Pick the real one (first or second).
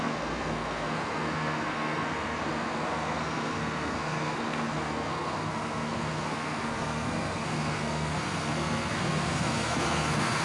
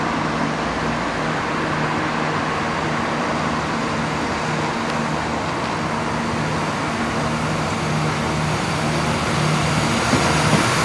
second